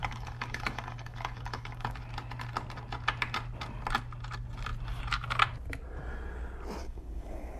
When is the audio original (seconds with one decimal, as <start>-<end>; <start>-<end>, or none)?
2.0-6.8